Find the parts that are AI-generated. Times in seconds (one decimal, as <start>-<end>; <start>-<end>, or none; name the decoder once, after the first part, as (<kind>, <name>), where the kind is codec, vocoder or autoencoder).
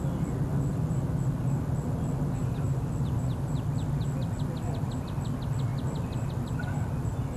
none